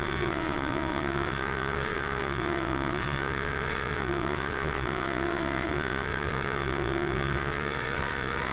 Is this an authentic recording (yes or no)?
no